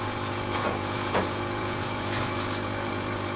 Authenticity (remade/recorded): remade